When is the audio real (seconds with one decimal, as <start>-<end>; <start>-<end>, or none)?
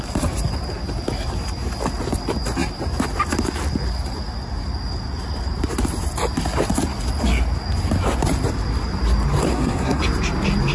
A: 0.0-9.5; 10.0-10.7